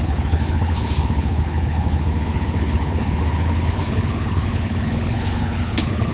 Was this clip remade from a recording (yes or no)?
yes